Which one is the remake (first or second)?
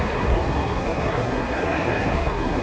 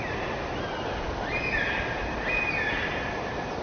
first